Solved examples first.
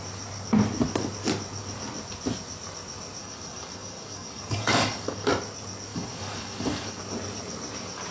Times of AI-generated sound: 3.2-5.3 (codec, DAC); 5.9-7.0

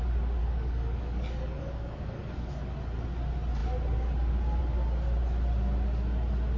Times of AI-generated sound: 0.4-2.7 (codec, DAC)

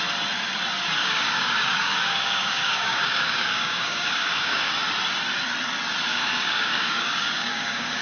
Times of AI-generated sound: 1.0-4.7 (codec, DAC); 6.1-8.0

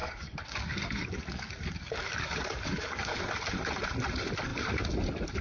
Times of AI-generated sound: 0.0-3.2 (codec, DAC)